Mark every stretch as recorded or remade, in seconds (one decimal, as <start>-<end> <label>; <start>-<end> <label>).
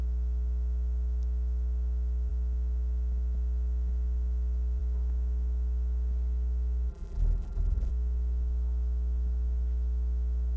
0.0-6.9 recorded; 6.9-7.9 remade; 7.9-10.6 recorded